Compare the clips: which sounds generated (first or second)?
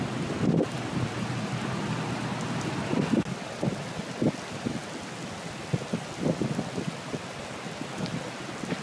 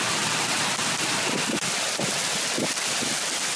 second